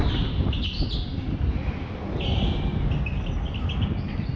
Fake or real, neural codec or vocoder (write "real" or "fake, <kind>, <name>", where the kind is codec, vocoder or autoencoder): real